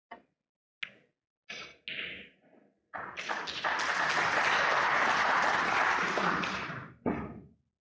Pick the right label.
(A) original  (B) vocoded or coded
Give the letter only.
A